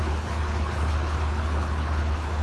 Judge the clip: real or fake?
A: fake